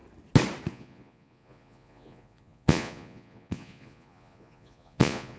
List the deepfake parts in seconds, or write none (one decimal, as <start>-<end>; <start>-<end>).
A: 0.7-5.4